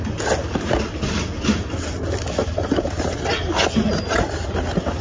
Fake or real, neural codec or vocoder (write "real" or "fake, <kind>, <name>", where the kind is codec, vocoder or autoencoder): real